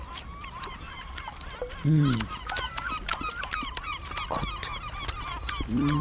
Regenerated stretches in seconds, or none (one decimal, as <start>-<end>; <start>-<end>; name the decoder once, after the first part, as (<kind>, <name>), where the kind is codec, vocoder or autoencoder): 0.0-3.1 (vocoder, BigVGAN v2); 5.3-6.0

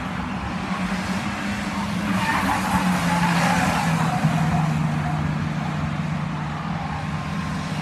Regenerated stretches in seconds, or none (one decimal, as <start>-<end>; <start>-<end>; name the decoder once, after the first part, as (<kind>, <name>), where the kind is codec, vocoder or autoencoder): none